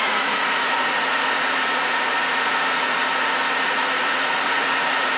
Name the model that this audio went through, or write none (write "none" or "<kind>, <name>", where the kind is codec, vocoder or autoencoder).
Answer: vocoder, Vocos